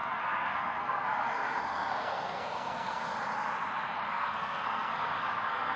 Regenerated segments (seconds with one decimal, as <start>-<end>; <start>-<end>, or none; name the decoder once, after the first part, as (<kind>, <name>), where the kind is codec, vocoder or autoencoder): 0.0-3.1 (codec, SNAC); 4.1-5.8